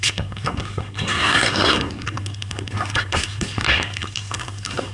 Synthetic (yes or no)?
yes